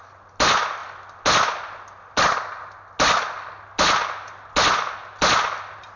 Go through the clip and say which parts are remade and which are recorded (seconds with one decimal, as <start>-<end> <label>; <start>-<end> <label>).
0.0-6.0 recorded